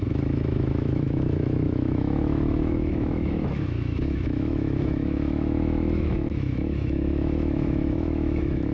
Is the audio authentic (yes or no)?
no